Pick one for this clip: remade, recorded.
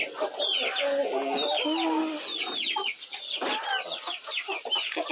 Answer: recorded